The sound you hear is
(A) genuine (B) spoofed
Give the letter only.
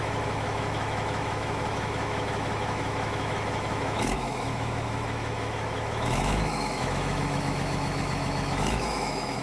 B